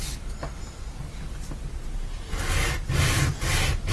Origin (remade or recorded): recorded